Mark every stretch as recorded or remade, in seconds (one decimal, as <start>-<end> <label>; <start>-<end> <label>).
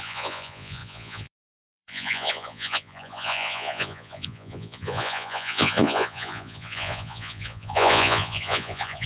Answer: 0.0-9.1 remade